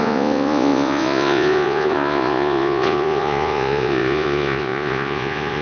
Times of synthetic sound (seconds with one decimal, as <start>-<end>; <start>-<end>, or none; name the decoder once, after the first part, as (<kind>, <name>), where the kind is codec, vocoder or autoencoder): 0.0-5.6 (vocoder, Vocos)